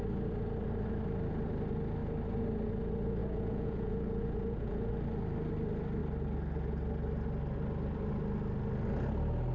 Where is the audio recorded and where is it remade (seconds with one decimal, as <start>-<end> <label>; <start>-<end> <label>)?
0.0-3.2 recorded; 3.2-4.9 remade; 4.9-9.5 recorded